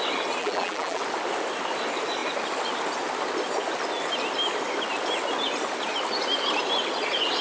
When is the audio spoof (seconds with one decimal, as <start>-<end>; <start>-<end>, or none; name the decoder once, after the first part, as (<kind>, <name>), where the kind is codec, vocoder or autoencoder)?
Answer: 0.4-1.0 (vocoder, BigVGAN v2)